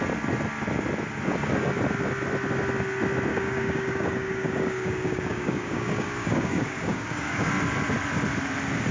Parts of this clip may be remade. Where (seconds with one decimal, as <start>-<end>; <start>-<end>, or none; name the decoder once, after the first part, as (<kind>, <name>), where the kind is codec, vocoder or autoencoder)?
3.3-7.5 (codec, DAC)